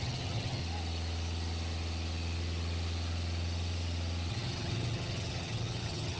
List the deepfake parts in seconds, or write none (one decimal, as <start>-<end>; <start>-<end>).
0.0-0.6; 4.3-6.2